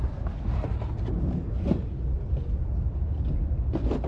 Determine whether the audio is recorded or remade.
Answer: recorded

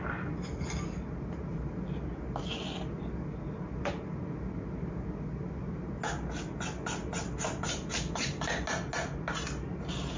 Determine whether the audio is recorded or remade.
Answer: recorded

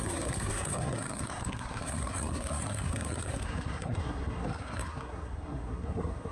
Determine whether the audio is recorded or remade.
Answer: remade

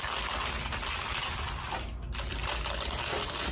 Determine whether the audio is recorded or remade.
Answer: recorded